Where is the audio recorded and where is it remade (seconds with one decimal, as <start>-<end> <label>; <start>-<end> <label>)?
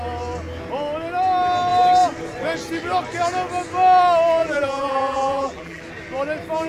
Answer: 0.0-4.4 recorded; 4.4-5.8 remade; 5.8-6.7 recorded